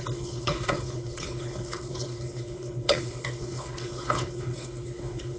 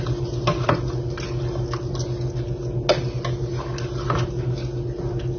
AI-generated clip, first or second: first